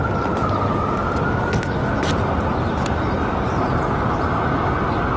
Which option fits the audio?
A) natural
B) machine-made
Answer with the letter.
A